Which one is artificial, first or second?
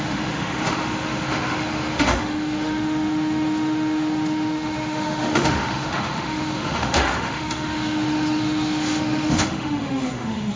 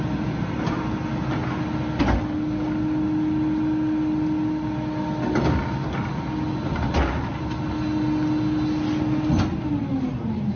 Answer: first